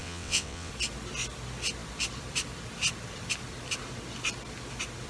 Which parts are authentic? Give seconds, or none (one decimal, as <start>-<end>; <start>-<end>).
0.7-5.1